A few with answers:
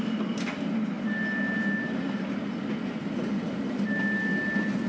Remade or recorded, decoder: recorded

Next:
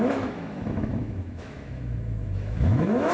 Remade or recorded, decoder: remade, autoencoder, DAC-VAE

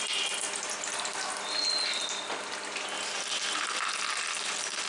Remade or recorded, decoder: recorded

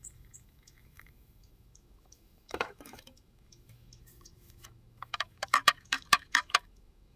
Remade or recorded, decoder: remade, autoencoder, DAC-VAE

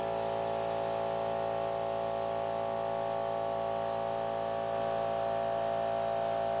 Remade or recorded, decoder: recorded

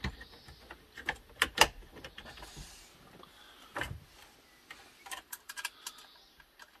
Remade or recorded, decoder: recorded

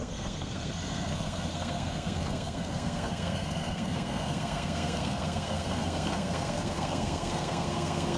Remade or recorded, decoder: remade, codec, SNAC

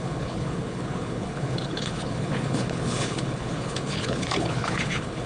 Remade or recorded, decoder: remade, codec, HILCodec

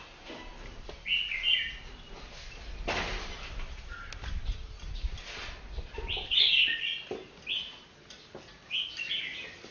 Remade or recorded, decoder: recorded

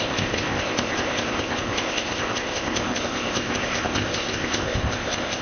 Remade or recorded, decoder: remade, codec, ZipCodec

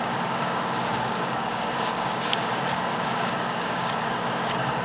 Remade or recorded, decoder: remade, codec, DAC